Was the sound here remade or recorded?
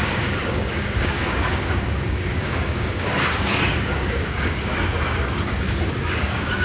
remade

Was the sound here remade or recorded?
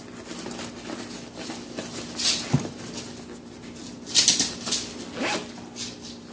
recorded